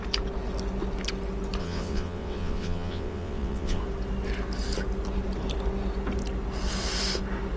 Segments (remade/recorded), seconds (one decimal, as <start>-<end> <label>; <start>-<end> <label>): 0.0-1.6 recorded; 1.6-3.8 remade; 3.8-7.6 recorded